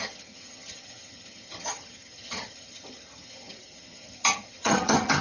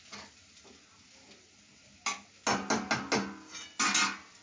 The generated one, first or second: first